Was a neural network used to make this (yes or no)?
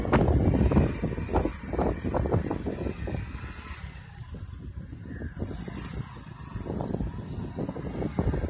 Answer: no